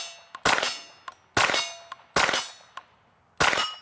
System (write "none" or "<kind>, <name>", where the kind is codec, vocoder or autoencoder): none